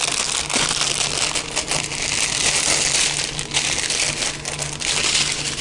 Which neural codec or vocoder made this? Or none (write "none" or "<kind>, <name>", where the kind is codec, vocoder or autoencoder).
none